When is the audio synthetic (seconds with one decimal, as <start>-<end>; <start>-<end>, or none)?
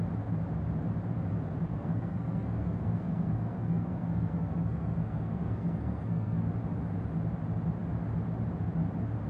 1.7-6.4